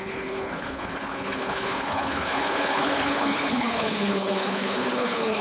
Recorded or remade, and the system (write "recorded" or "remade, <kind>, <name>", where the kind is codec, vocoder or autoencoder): remade, codec, HILCodec